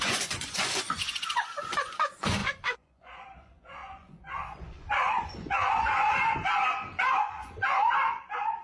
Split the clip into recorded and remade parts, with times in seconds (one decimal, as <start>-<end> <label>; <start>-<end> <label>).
0.0-8.6 remade